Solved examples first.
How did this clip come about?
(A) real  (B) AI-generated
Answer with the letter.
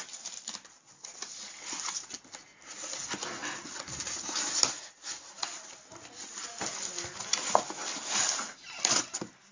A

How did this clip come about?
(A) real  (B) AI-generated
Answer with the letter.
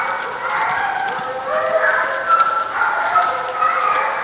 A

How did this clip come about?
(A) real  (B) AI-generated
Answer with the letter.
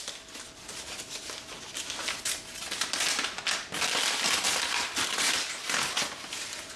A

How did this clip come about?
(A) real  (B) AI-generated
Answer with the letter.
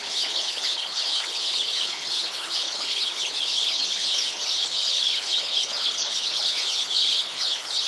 B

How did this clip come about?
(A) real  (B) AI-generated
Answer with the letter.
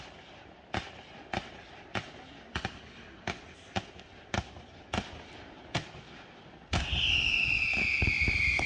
A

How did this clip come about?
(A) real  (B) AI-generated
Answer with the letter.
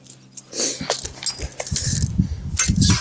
A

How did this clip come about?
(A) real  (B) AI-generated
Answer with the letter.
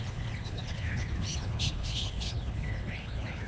B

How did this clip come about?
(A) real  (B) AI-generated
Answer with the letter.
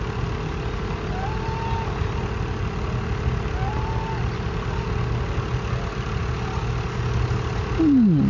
A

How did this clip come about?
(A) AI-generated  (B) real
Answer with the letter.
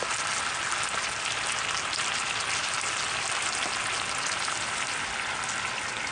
B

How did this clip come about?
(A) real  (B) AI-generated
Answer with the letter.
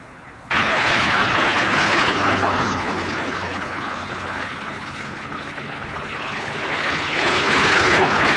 B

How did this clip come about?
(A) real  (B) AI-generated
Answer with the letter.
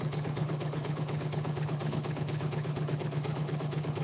B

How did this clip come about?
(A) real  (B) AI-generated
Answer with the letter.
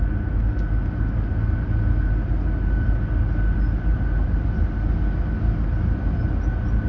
A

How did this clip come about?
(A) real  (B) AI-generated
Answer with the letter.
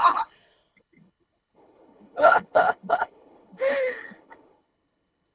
B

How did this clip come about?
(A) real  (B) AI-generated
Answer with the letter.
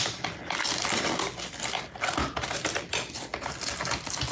A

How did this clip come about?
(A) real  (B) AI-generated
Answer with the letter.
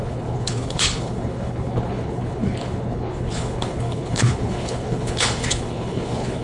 B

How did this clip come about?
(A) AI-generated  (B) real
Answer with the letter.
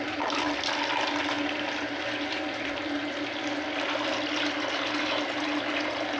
B